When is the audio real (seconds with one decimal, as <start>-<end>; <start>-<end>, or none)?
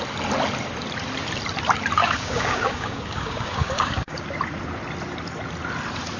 0.0-2.0; 4.2-6.2